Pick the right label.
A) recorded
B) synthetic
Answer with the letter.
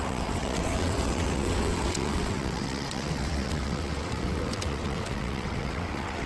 B